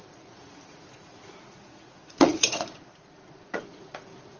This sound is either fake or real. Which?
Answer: fake